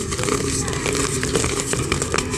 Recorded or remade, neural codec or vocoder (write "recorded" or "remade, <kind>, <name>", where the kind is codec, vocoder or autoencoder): recorded